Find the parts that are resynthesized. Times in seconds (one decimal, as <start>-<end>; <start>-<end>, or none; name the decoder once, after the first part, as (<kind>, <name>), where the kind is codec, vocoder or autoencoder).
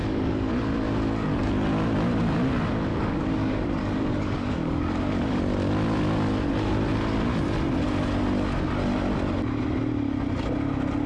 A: 0.0-0.5 (codec, DAC); 2.9-5.4